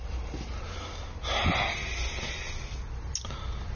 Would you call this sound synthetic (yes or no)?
no